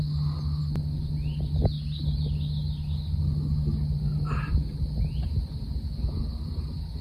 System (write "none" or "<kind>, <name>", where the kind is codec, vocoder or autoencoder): none